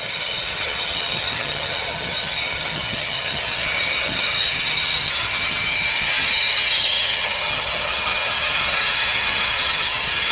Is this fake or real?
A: fake